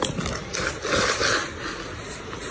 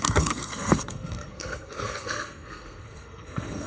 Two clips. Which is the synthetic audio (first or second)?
second